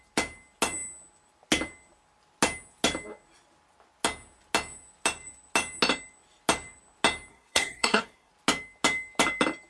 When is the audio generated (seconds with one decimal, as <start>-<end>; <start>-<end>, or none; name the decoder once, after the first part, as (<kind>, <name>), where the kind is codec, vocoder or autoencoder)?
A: 7.3-8.3 (codec, SNAC)